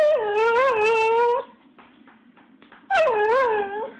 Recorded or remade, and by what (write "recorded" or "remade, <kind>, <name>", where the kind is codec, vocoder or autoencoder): recorded